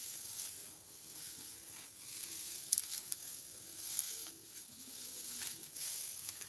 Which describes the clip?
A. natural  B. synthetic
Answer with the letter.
B